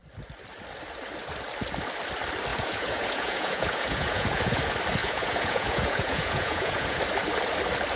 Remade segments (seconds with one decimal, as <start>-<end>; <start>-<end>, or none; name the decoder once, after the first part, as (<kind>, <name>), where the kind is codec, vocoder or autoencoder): 2.5-4.6 (vocoder, Vocos); 5.0-7.0